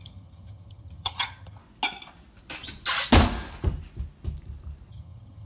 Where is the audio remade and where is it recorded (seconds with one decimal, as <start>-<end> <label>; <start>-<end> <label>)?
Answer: 0.0-1.6 remade; 1.6-4.9 recorded; 4.9-5.5 remade